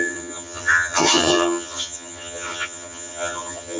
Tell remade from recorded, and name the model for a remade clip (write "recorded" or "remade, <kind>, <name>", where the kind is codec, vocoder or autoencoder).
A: remade, vocoder, HiFi-GAN